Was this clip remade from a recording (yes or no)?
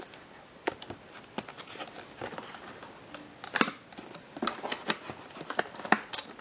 no